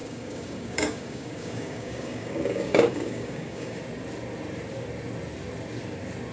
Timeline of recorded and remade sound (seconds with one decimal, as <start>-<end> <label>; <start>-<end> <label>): 0.0-3.8 remade; 3.8-6.3 recorded